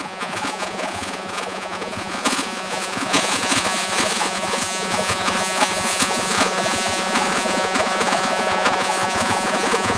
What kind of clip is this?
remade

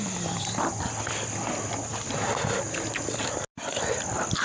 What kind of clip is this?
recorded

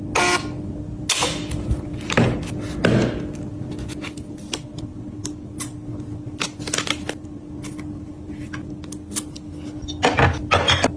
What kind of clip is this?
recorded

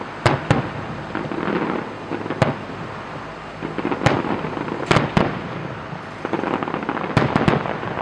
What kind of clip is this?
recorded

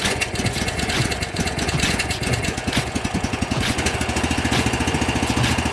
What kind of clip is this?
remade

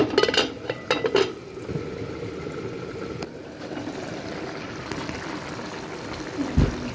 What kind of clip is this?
recorded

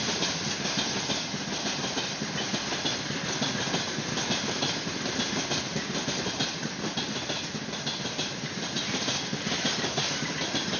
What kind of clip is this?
recorded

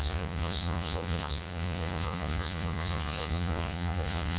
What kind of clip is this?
remade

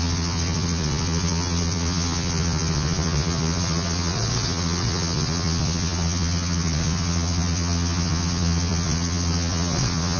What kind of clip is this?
remade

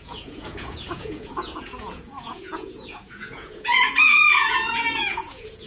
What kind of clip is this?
remade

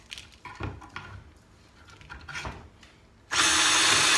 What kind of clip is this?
recorded